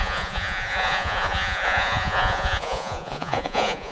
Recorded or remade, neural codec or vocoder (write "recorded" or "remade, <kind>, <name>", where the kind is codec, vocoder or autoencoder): remade, vocoder, Vocos